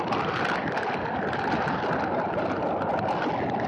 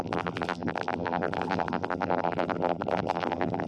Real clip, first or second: first